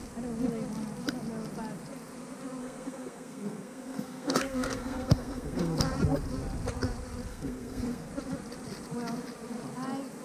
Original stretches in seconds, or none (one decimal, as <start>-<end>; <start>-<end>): 0.0-2.6; 5.8-7.3; 8.1-10.2